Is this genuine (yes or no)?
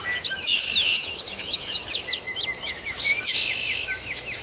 no